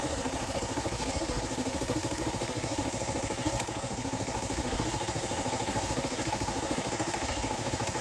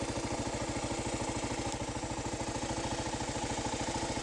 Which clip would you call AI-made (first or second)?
first